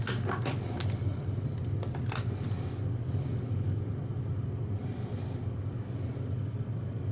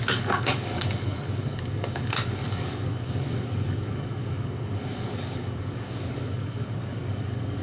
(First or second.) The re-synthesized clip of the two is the second